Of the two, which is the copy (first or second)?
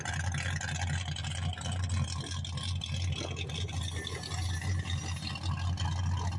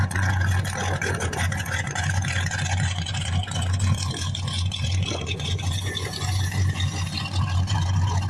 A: second